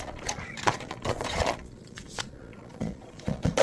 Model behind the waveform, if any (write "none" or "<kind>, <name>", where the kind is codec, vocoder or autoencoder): vocoder, Vocos